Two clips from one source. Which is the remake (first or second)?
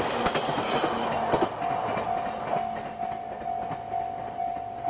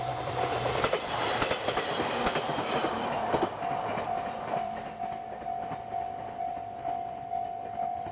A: second